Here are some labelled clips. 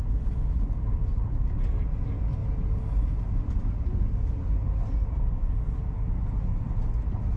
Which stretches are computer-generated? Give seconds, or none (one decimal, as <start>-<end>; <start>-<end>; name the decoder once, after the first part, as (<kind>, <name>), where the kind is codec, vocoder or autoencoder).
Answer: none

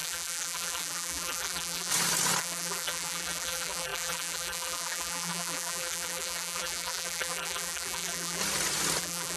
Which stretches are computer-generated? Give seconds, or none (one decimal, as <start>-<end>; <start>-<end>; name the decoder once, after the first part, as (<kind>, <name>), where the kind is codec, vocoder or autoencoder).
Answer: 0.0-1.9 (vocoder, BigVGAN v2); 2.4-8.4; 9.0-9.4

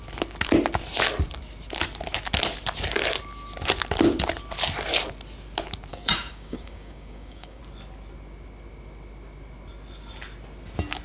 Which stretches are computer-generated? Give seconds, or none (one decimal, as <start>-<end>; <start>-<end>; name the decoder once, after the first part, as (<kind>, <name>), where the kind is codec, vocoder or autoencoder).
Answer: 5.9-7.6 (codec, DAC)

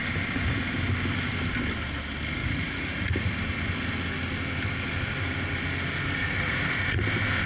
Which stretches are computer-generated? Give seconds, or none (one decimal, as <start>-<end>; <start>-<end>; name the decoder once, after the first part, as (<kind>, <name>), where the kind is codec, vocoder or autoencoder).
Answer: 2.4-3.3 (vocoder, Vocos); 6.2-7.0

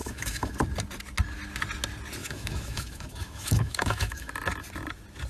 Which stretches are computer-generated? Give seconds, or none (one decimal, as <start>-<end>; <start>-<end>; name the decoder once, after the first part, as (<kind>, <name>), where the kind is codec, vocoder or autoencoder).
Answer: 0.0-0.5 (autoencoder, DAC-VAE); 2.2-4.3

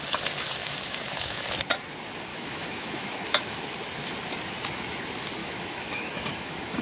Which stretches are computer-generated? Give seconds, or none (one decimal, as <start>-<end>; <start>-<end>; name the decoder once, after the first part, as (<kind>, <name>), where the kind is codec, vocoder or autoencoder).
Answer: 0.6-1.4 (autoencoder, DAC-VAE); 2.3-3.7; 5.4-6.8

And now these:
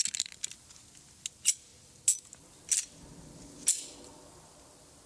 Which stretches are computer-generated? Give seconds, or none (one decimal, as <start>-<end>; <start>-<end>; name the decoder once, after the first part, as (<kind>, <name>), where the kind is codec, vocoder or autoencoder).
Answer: none

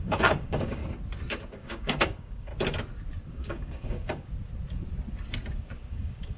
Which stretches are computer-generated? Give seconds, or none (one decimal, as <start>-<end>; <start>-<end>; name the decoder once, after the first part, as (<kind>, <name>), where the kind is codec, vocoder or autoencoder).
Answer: 0.0-0.8 (codec, DAC); 1.5-2.5; 3.3-4.3; 5.9-6.4